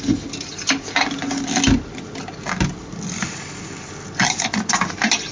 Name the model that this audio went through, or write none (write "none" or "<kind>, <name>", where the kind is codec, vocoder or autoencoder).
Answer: none